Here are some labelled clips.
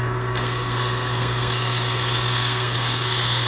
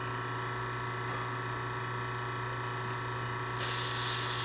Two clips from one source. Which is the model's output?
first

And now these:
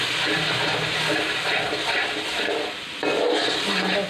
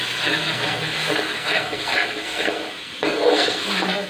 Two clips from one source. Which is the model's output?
second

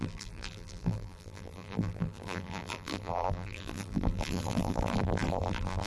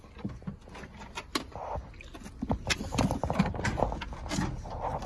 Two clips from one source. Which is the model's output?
first